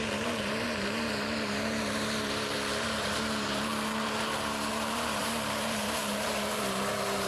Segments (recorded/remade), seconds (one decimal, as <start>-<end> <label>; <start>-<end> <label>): 0.0-7.3 remade